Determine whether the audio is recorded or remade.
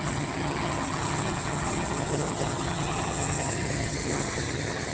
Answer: remade